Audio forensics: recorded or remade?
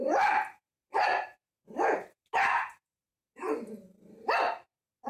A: recorded